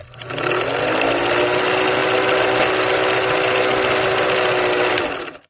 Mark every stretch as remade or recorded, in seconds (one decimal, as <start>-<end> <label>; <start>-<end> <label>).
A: 0.0-5.5 recorded